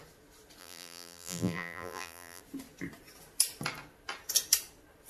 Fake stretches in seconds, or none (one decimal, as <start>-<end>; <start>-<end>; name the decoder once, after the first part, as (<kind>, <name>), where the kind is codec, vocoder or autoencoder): 0.6-2.4 (vocoder, BigVGAN v2)